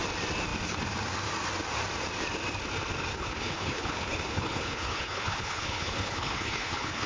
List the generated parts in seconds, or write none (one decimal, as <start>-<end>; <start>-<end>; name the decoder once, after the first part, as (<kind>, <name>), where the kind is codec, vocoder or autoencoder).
3.1-7.1 (codec, HILCodec)